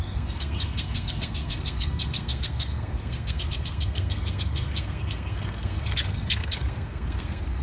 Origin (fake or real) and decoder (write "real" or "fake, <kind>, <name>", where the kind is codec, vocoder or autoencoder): fake, codec, SNAC